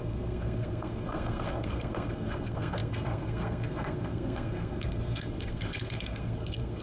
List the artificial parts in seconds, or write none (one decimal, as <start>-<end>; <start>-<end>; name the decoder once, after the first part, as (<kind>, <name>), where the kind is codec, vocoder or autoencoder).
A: 0.0-6.8 (codec, SNAC)